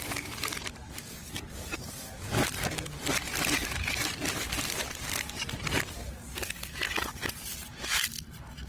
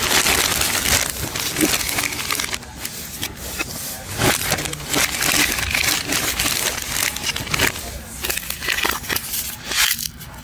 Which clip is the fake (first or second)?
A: first